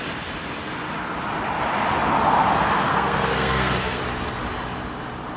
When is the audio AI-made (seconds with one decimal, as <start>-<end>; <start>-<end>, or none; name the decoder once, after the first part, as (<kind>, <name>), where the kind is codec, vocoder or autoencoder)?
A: 2.9-4.0 (codec, SNAC)